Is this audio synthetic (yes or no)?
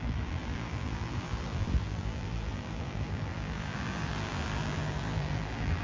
yes